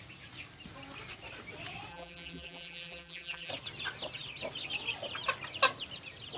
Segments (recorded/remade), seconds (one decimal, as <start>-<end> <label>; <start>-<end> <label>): 0.0-1.9 recorded; 1.9-3.5 remade; 3.5-6.4 recorded